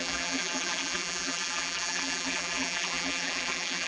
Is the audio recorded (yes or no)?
no